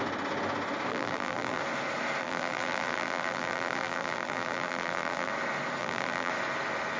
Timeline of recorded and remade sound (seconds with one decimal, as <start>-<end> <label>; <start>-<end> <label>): 0.0-0.9 recorded; 0.9-1.6 remade; 1.6-2.2 recorded; 2.2-5.3 remade; 5.3-5.8 recorded; 5.8-6.3 remade; 6.3-7.0 recorded

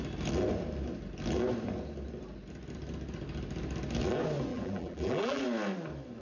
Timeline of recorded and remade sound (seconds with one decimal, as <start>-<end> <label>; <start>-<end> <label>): 0.0-4.5 recorded; 4.5-5.4 remade; 5.4-6.2 recorded

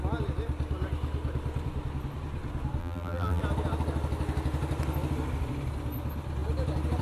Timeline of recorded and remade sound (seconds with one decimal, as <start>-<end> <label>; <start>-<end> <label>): 0.0-2.8 recorded; 2.8-3.4 remade; 3.4-7.0 recorded

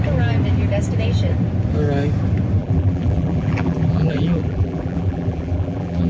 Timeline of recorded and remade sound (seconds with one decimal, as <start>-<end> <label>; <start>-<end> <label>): 0.0-2.6 recorded; 2.6-6.1 remade

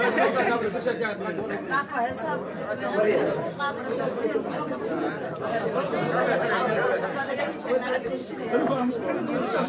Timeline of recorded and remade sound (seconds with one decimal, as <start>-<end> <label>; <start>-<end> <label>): 0.0-5.3 recorded; 5.3-6.5 remade; 6.5-8.2 recorded; 8.2-8.9 remade; 8.9-9.7 recorded

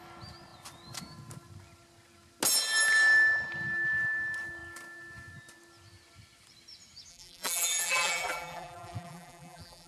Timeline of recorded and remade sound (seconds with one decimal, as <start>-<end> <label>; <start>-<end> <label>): 0.0-7.1 recorded; 7.1-9.9 remade

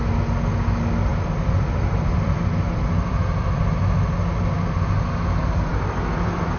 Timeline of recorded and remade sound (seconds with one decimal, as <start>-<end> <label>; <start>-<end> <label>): 0.0-1.1 recorded; 1.1-3.8 remade; 3.8-5.7 recorded; 5.7-6.6 remade